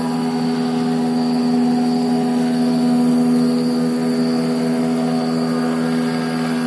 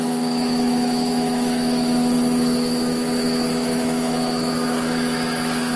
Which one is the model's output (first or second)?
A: second